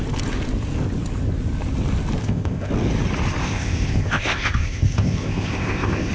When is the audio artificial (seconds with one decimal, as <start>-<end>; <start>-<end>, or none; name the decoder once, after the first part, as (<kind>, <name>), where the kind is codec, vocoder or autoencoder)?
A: 2.2-2.7 (codec, ZipCodec); 3.4-6.1